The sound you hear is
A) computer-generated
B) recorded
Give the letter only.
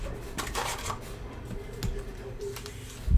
B